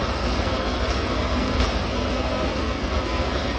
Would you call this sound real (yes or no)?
no